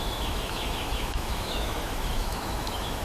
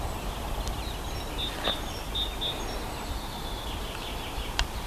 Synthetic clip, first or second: first